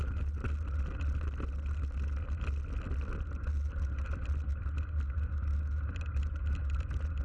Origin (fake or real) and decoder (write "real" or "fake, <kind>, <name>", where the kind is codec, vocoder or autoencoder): real